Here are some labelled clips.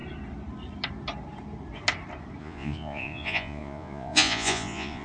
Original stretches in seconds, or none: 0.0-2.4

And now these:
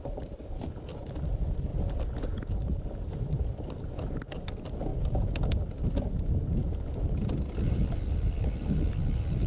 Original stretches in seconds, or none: 0.0-9.5

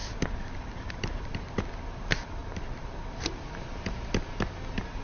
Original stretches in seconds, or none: 0.0-2.4; 3.8-5.0

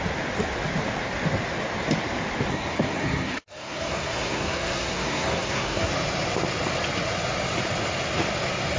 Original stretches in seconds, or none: 0.0-2.5; 5.9-8.8

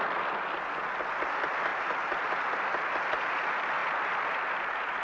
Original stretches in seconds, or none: 0.0-5.0

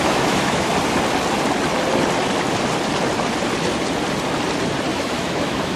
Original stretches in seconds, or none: 0.7-4.9

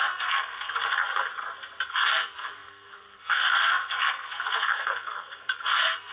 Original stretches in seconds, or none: 1.3-1.9